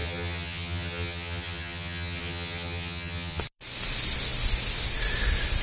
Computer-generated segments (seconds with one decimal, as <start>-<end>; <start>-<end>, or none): 0.0-3.4

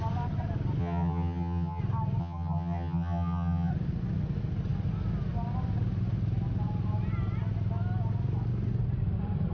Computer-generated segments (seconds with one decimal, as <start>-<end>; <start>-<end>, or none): 0.8-1.8; 2.2-3.7